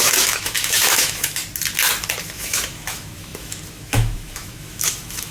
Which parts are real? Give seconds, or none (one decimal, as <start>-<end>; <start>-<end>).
1.4-2.2